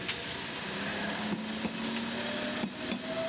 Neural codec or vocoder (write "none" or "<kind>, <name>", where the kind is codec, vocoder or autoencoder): none